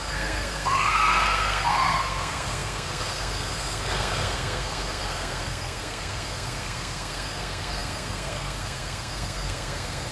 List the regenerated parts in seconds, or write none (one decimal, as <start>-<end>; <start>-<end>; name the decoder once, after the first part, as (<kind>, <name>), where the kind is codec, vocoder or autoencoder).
0.0-10.1 (codec, SNAC)